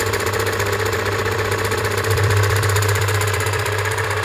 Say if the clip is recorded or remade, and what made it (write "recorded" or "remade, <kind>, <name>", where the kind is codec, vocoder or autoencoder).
remade, vocoder, BigVGAN v2